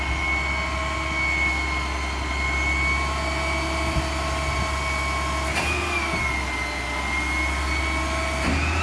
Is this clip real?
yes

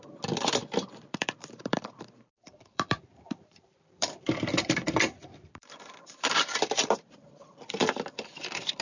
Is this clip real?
no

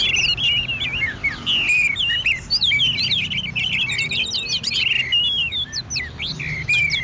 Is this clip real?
yes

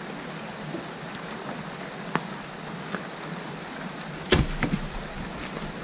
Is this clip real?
yes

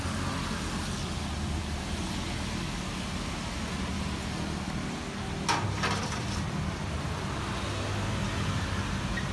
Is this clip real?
yes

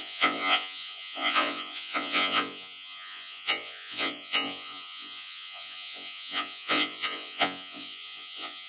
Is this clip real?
no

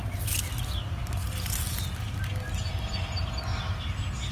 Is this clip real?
yes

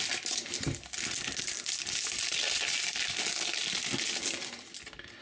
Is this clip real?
yes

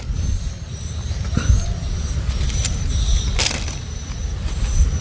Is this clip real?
yes